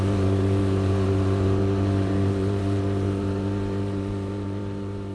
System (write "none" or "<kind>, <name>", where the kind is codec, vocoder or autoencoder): vocoder, BigVGAN v2